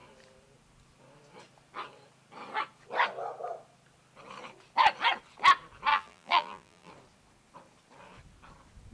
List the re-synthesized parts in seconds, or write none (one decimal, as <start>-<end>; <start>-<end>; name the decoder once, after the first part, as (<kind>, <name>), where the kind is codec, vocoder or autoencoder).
5.9-6.9 (vocoder, BigVGAN v2)